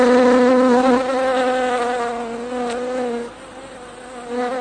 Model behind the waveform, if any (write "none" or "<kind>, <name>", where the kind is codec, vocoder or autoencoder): none